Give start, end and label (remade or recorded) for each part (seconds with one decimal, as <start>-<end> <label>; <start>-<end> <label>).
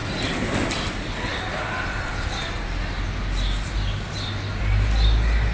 0.0-5.5 recorded